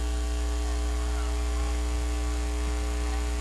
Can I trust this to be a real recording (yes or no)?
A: yes